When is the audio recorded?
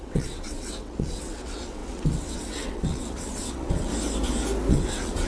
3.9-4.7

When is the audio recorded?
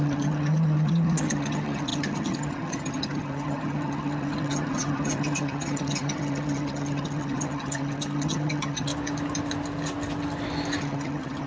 8.9-10.8